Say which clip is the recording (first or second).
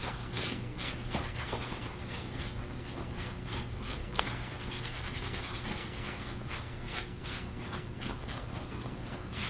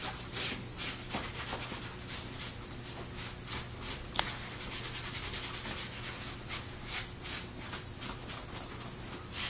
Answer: second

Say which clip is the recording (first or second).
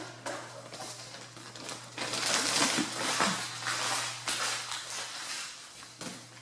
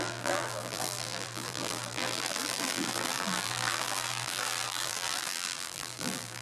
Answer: first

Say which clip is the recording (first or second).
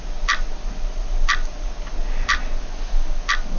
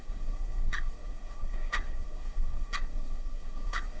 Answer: first